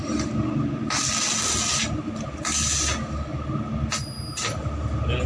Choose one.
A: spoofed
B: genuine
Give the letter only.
B